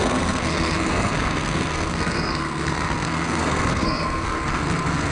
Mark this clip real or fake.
fake